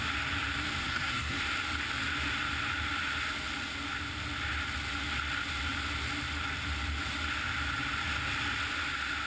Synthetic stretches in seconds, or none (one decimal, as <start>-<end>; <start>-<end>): 0.8-1.4